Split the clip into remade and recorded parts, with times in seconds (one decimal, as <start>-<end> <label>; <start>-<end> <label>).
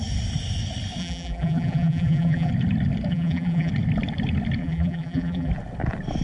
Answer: 0.0-1.0 recorded; 1.0-2.5 remade; 2.5-3.1 recorded; 3.1-3.7 remade; 3.7-4.6 recorded; 4.6-5.5 remade; 5.5-6.2 recorded